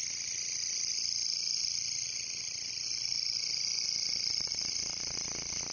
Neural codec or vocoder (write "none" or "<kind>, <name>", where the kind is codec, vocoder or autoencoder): none